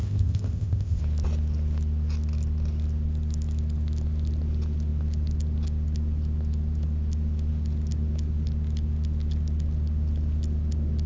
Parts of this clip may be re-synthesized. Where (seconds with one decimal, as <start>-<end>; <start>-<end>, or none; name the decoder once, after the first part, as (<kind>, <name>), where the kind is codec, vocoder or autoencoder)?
0.0-1.0 (codec, ZipCodec)